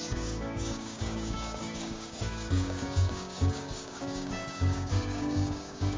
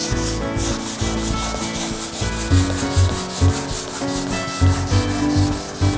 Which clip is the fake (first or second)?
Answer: first